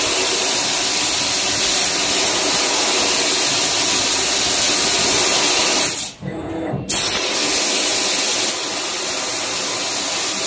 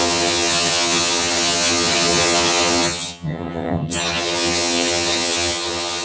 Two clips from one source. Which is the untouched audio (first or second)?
first